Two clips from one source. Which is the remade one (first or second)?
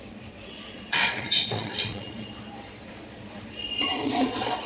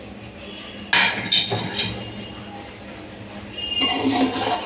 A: first